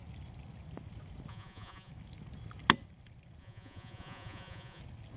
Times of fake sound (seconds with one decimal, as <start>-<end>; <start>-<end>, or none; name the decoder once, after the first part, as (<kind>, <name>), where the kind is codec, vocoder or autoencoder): 1.3-1.9 (vocoder, Vocos); 3.4-4.8